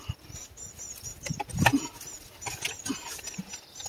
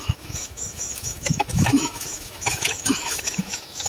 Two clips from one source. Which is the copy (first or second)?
second